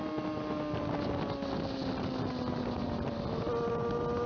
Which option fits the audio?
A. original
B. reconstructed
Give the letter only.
A